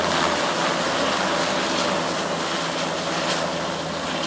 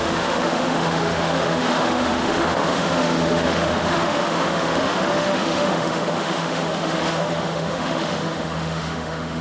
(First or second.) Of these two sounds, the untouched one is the first